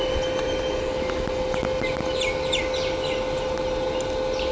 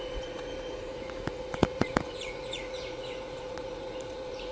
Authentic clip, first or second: first